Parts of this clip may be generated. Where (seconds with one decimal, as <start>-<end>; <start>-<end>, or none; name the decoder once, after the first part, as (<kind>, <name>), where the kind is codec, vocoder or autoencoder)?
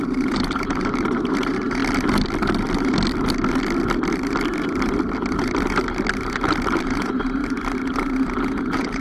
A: 0.0-1.8 (vocoder, BigVGAN v2); 6.8-7.4; 8.6-9.0